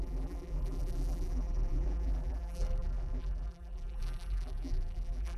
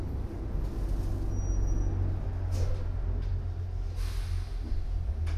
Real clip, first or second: second